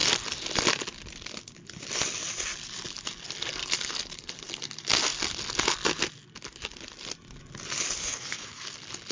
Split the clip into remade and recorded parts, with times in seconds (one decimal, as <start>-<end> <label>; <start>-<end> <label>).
0.0-8.0 recorded; 8.0-8.6 remade; 8.6-9.1 recorded